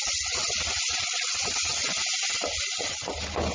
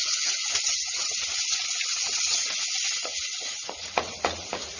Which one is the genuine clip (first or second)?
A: first